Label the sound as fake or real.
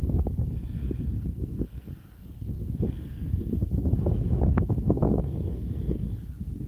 fake